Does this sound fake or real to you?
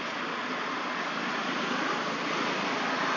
real